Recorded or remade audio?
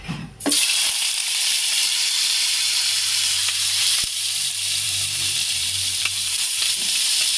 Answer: remade